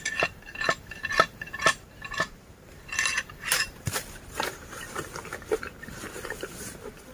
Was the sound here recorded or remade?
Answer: remade